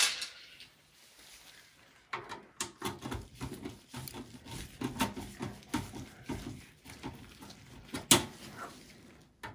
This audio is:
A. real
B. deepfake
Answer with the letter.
A